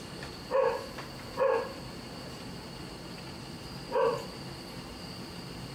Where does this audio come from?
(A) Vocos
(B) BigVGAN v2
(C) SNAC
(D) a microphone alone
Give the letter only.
D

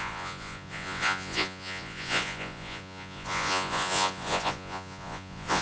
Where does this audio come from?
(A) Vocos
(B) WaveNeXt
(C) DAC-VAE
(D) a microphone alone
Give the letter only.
A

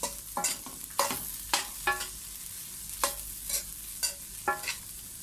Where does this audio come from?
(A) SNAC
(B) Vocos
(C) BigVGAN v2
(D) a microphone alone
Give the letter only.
D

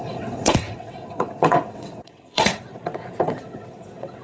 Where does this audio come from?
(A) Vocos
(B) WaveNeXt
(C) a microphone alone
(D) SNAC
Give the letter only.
B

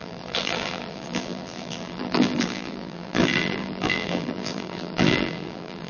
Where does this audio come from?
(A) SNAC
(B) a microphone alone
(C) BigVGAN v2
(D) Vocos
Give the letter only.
C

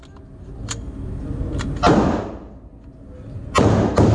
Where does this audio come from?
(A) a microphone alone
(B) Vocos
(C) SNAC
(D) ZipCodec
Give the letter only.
A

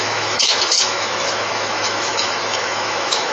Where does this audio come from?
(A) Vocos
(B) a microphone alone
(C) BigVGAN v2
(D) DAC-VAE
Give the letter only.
D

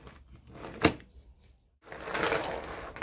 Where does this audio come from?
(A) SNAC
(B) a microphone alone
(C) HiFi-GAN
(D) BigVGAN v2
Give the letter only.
B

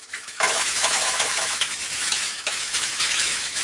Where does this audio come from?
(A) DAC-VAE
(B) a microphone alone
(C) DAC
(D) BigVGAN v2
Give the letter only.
A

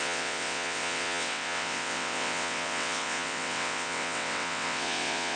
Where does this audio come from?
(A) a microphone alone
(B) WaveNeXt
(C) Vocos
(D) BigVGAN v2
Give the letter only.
B